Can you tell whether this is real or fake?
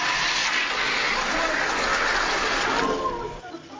real